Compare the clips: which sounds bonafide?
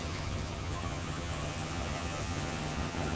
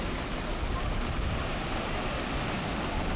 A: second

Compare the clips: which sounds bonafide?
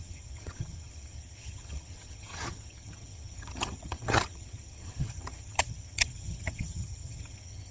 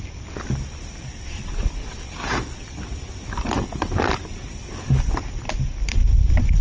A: second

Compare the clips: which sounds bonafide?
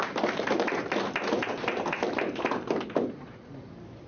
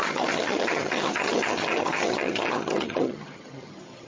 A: first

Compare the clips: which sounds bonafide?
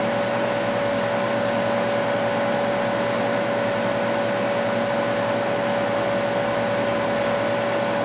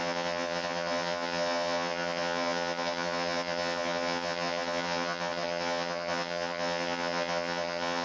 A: first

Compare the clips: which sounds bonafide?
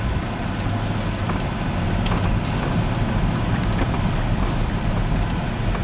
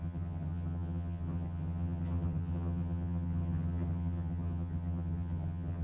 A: first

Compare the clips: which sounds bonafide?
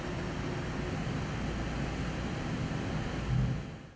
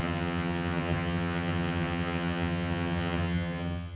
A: first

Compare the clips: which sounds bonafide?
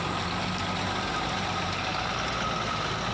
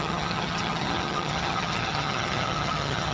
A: first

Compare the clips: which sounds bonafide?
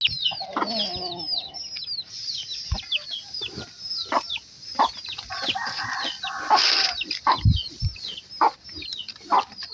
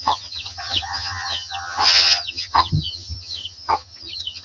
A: first